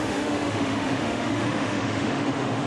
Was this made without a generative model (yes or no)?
no